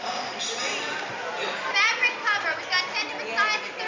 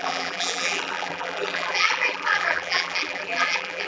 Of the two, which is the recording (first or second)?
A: first